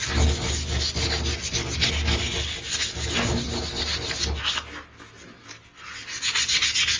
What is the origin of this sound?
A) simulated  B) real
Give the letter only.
B